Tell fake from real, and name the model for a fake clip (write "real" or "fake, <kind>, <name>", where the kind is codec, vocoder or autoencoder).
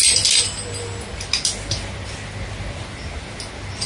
real